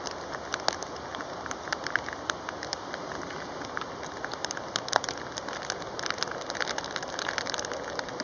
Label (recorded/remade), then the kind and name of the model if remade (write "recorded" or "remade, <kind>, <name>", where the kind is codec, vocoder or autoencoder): recorded